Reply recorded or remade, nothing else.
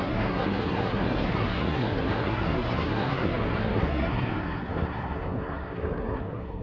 remade